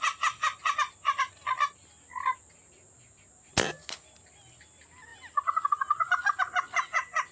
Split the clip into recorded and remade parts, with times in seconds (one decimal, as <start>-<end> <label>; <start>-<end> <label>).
0.0-7.3 recorded

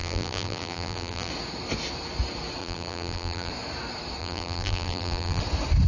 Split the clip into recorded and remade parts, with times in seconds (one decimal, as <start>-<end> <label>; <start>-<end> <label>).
0.0-1.3 remade; 1.3-2.6 recorded; 2.6-3.5 remade; 3.5-4.2 recorded; 4.2-5.4 remade; 5.4-5.9 recorded

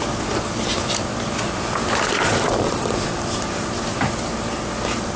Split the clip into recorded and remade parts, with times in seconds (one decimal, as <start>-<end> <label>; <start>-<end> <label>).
0.0-1.1 recorded; 1.1-4.2 remade; 4.2-5.2 recorded

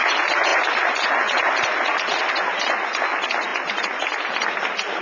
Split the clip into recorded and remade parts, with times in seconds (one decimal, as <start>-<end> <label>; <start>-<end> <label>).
0.0-5.0 recorded

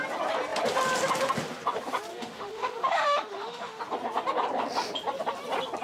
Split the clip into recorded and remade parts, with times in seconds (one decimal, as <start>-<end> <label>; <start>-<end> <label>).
0.0-2.1 recorded; 2.1-3.8 remade; 3.8-5.8 recorded